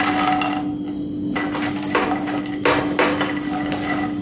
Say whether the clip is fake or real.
real